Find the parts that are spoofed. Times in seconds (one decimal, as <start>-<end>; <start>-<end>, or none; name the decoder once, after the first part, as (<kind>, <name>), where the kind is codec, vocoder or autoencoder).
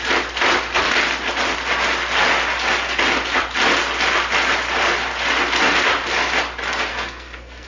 6.9-7.7 (codec, SNAC)